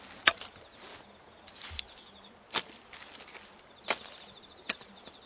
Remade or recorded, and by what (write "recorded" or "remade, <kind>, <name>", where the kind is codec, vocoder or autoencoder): recorded